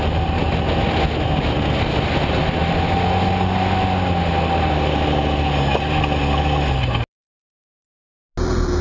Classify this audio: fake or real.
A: real